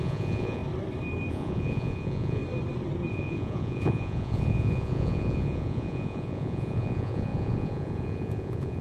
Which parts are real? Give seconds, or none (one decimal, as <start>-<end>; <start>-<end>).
0.6-1.3; 2.4-3.1